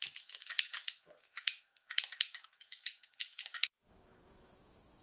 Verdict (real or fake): fake